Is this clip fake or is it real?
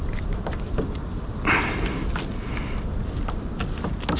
real